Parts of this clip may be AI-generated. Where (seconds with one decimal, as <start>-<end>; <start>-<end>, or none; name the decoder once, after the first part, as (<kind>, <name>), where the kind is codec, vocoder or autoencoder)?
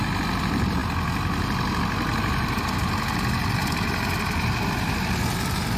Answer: 2.1-2.9 (vocoder, BigVGAN v2); 3.6-5.8